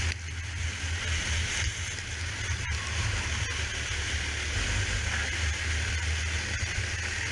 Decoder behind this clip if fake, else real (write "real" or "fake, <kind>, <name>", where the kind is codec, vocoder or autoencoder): real